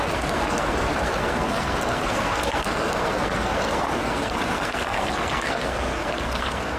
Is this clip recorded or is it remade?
remade